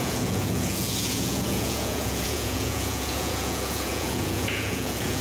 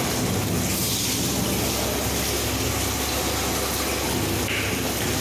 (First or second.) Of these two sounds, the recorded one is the second